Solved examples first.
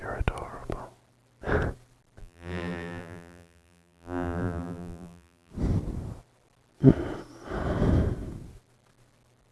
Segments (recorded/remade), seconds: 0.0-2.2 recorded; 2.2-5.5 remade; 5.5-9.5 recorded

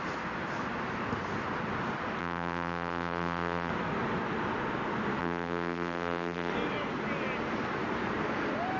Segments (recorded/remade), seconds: 0.0-2.2 recorded; 2.2-3.7 remade; 3.7-5.2 recorded; 5.2-6.5 remade; 6.5-8.8 recorded

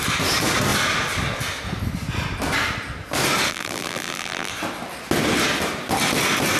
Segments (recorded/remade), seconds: 0.0-3.5 recorded; 3.5-4.5 remade; 4.5-6.6 recorded

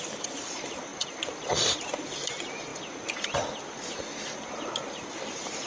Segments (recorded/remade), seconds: 0.0-5.7 recorded

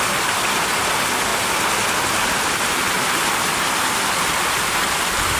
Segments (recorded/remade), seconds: 0.0-5.4 recorded

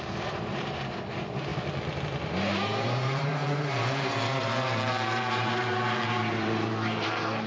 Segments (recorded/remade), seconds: 0.0-1.5 remade; 1.5-2.2 recorded; 2.2-7.5 remade